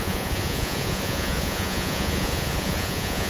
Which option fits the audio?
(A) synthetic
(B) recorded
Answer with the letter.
A